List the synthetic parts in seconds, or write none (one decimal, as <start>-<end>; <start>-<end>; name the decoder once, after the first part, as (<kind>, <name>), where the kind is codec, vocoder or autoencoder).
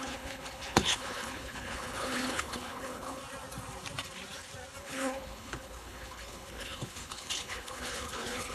0.0-3.2 (codec, HILCodec); 4.8-8.5